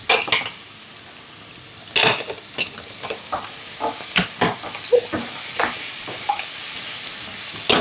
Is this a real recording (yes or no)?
yes